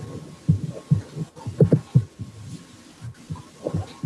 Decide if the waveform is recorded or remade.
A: recorded